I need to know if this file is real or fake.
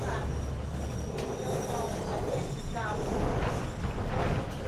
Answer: real